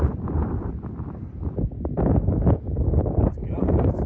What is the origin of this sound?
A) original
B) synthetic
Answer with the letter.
A